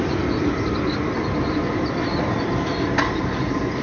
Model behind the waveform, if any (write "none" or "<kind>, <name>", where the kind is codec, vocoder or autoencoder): none